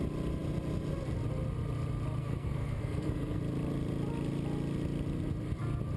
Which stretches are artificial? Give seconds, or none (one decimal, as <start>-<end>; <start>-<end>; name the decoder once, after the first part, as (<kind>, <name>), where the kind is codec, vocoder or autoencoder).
2.2-3.4 (codec, SNAC)

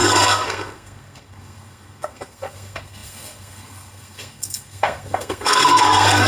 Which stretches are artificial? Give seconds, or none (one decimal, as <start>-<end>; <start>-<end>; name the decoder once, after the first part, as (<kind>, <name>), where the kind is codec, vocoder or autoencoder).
0.0-6.3 (codec, SNAC)